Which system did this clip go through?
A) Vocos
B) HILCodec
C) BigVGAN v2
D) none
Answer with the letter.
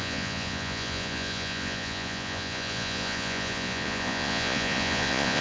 A